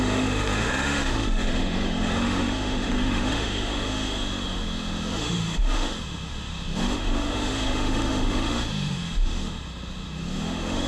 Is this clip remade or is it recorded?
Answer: remade